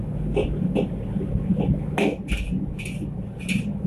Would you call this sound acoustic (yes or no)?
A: yes